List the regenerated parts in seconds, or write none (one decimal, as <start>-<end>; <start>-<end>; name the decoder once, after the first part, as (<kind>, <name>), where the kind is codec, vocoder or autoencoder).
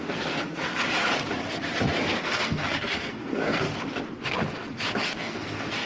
0.0-0.7 (codec, SNAC); 2.2-3.7; 5.1-5.9